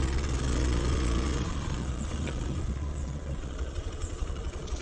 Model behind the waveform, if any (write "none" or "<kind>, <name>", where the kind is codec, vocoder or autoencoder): vocoder, Vocos